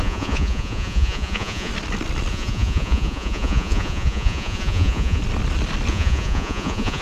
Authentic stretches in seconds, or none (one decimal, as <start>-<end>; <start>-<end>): 1.7-2.3; 5.2-5.9